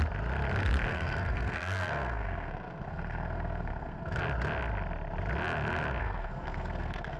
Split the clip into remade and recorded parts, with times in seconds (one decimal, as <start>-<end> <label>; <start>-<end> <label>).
0.0-0.9 recorded; 0.9-4.2 remade; 4.2-6.0 recorded; 6.0-7.2 remade